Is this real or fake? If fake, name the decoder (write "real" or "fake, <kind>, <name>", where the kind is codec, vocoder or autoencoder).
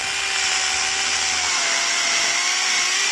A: real